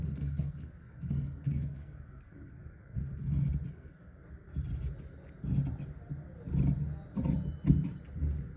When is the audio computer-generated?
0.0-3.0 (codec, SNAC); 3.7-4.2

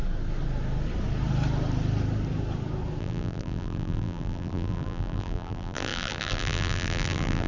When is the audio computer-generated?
3.0-7.5 (vocoder, BigVGAN v2)

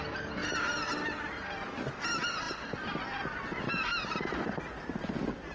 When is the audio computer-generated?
none

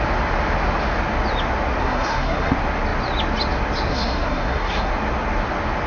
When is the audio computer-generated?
1.8-2.5 (codec, SNAC); 3.9-4.9

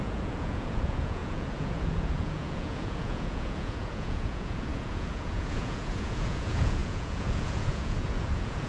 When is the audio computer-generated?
0.0-8.7 (vocoder, Vocos)

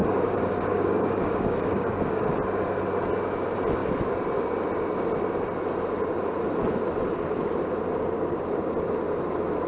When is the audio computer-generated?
0.0-2.3 (codec, DAC)